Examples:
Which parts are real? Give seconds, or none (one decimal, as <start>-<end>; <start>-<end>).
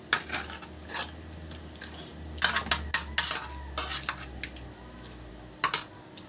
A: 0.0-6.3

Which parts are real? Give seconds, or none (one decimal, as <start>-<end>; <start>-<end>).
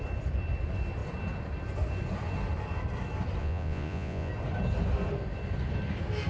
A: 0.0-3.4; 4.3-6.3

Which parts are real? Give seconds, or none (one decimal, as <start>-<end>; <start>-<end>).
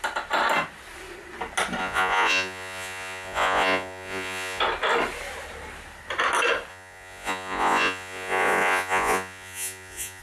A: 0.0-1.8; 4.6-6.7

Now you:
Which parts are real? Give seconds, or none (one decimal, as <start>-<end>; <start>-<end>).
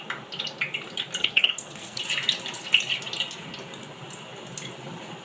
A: 0.0-1.2; 2.0-5.2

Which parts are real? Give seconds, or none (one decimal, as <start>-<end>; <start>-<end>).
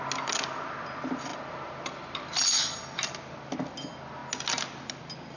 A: 0.0-5.4